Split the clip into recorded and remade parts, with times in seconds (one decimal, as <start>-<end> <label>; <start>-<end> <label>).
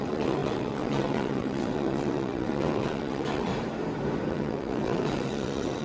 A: 0.0-3.5 remade; 3.5-4.3 recorded; 4.3-5.8 remade